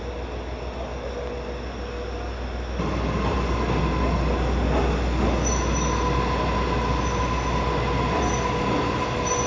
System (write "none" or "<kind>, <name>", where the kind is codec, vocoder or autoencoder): none